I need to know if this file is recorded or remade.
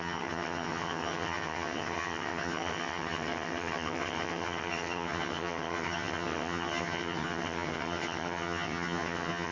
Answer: remade